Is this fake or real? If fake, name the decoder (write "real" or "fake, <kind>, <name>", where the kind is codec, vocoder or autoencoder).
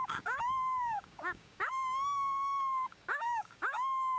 fake, codec, DAC